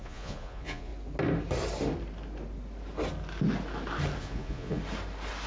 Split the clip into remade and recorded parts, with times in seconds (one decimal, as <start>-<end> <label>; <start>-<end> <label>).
0.0-0.9 remade; 0.9-4.2 recorded; 4.2-4.8 remade; 4.8-5.5 recorded